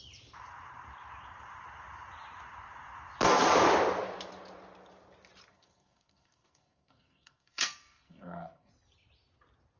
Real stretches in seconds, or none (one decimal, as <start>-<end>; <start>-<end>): 0.0-5.5; 8.7-9.8